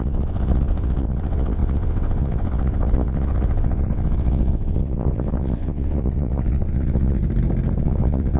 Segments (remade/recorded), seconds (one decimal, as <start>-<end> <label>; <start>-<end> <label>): 0.0-7.2 remade; 7.2-7.8 recorded; 7.8-8.4 remade